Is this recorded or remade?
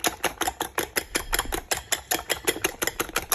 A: recorded